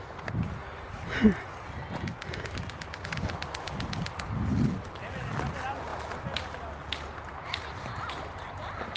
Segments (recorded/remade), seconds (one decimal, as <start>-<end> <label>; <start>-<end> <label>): 0.0-9.0 recorded